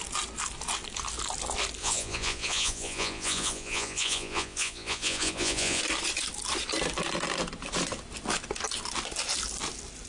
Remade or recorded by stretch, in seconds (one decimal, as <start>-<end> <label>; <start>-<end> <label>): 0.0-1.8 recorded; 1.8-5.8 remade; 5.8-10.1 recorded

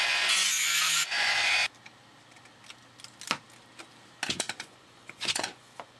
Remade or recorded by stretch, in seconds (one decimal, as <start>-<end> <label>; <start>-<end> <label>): 0.0-1.4 remade; 1.4-4.3 recorded; 4.3-6.0 remade

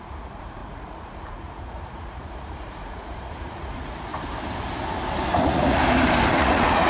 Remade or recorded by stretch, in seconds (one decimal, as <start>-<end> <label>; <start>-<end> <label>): 0.0-4.1 remade; 4.1-5.3 recorded; 5.3-5.8 remade; 5.8-6.3 recorded; 6.3-6.9 remade